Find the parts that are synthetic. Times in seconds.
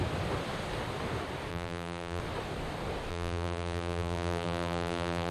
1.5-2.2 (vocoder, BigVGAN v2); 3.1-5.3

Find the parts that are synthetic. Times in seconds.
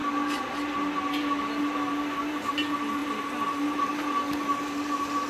none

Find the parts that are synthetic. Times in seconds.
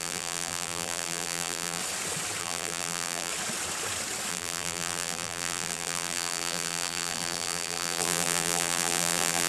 0.0-1.8 (vocoder, BigVGAN v2); 2.4-3.3; 4.3-9.5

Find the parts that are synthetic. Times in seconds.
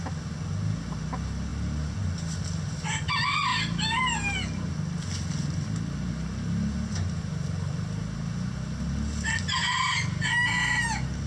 none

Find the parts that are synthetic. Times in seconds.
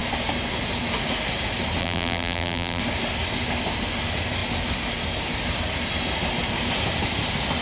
1.8-2.8 (vocoder, BigVGAN v2)